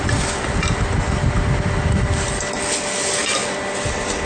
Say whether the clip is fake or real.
real